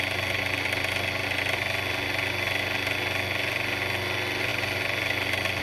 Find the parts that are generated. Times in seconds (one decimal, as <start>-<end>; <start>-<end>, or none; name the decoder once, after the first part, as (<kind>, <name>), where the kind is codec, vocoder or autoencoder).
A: none